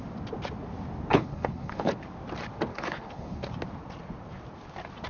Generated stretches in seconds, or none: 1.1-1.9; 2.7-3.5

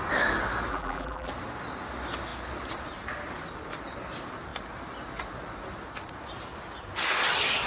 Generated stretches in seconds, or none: 0.7-1.3

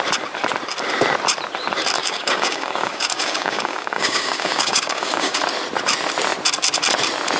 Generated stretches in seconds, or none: 2.0-5.4

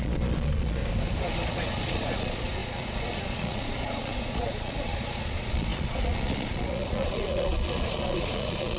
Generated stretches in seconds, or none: 0.0-0.8; 1.5-8.8